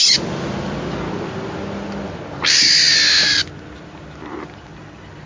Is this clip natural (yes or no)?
yes